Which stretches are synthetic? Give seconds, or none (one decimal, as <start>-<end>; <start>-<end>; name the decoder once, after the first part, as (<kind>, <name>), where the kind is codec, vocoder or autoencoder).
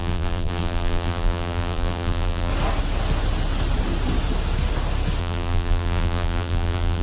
0.0-2.5 (vocoder, BigVGAN v2); 5.2-7.0